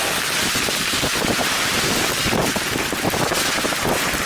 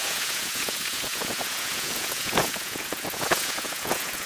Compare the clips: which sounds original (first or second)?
first